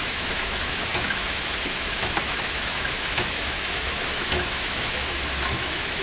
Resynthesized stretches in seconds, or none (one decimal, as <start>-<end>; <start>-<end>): 0.0-6.0

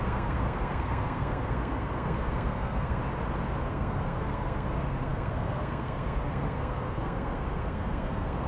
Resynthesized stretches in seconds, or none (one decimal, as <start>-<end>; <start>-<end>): 0.0-3.0; 3.7-8.5

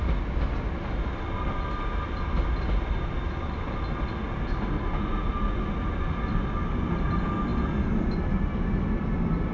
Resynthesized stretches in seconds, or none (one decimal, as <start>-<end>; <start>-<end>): none

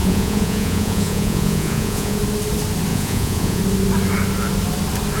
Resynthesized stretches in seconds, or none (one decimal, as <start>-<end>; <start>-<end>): 0.0-2.2; 2.9-3.6

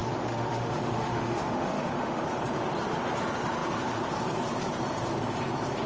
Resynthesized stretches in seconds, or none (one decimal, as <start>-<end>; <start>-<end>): 0.0-2.2

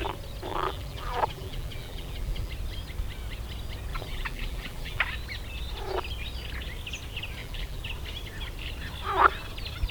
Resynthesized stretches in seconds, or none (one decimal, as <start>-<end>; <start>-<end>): 0.5-2.5; 3.9-5.0; 7.4-7.9

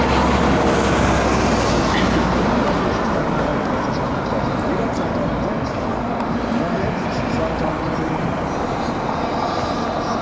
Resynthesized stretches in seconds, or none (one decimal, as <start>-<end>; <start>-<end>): none

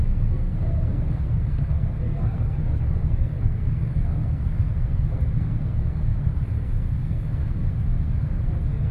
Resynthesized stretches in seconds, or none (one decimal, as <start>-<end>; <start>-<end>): 0.0-8.9